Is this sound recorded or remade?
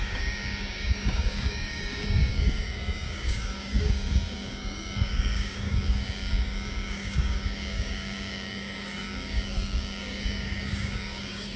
remade